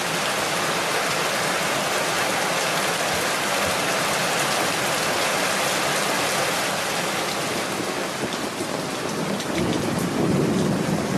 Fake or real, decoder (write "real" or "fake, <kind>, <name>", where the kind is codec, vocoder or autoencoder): real